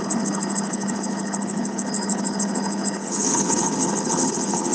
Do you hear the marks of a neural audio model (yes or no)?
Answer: yes